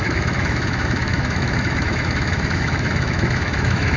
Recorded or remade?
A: remade